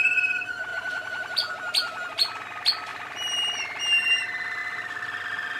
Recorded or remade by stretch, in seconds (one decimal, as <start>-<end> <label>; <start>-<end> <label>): 0.0-0.7 recorded; 0.7-1.5 remade; 1.5-2.9 recorded; 2.9-3.8 remade; 3.8-5.6 recorded